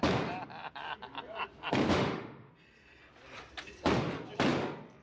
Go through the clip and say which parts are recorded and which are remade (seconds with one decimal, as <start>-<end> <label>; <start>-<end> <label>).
0.0-1.9 recorded; 1.9-2.5 remade; 2.5-5.0 recorded